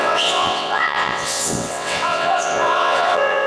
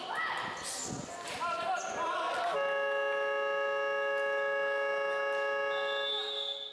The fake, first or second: first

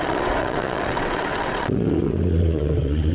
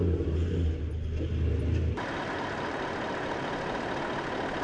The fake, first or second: first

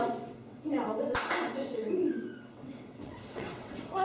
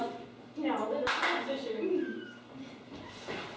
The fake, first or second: first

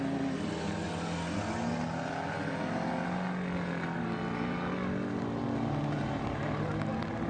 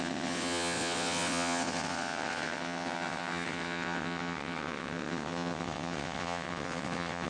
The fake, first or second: second